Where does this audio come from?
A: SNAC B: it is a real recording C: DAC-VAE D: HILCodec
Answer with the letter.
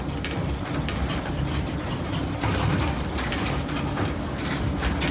B